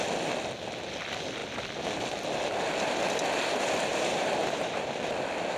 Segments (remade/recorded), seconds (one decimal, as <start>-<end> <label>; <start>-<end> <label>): 0.0-3.9 recorded; 3.9-4.8 remade; 4.8-5.6 recorded